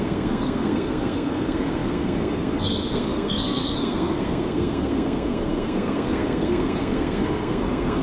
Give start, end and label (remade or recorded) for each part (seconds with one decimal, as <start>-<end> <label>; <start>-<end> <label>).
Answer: 0.0-8.0 remade